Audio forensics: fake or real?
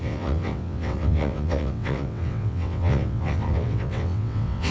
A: fake